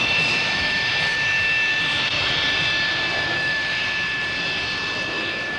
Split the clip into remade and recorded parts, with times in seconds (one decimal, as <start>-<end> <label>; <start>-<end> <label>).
0.0-0.9 remade; 0.9-3.3 recorded; 3.3-3.8 remade; 3.8-5.1 recorded; 5.1-5.6 remade